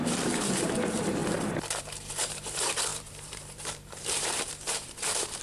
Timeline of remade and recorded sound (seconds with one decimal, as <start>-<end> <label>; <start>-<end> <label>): 0.0-1.2 remade; 1.2-1.8 recorded; 1.8-5.4 remade